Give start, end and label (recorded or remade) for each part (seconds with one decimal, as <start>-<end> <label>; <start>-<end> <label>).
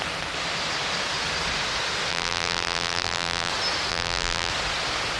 0.0-2.1 recorded; 2.1-3.5 remade; 3.5-3.9 recorded; 3.9-4.5 remade; 4.5-5.2 recorded